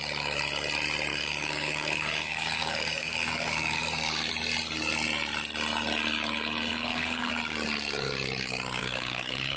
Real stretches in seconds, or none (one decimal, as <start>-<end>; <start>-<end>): 0.0-1.1; 4.3-6.7; 7.3-8.8